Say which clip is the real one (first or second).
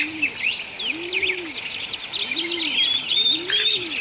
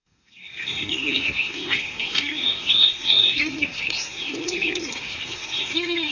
first